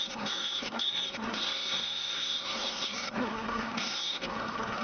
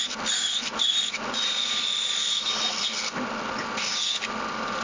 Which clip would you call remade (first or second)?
first